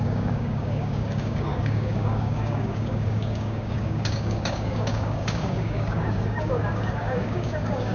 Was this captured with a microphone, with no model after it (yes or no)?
no